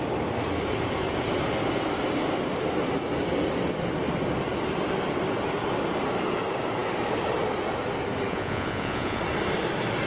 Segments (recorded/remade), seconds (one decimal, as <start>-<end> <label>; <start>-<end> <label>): 0.0-8.3 recorded; 8.3-9.2 remade; 9.2-10.1 recorded